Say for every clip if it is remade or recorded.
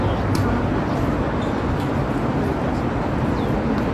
recorded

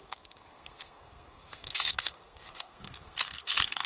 remade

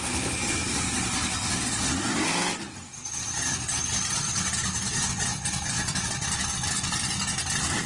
recorded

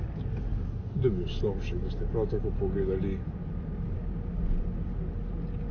recorded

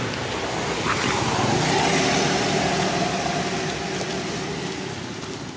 recorded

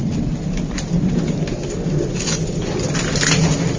recorded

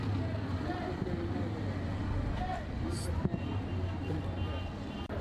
recorded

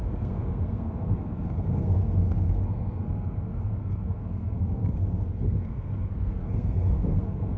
remade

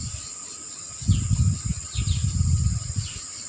recorded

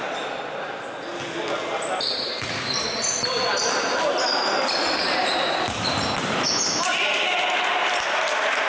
recorded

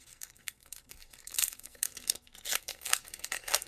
remade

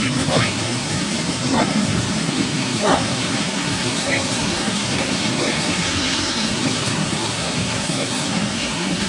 remade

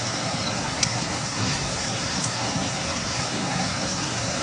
remade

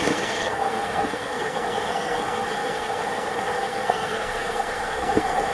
remade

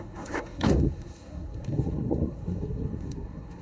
remade